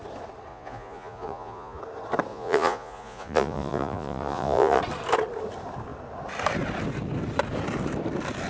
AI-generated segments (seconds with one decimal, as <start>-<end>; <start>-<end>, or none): 0.5-1.8; 2.3-4.8